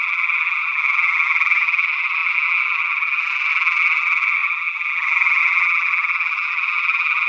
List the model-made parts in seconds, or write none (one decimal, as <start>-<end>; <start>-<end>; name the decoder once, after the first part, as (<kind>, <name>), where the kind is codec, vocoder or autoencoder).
0.0-7.3 (vocoder, BigVGAN v2)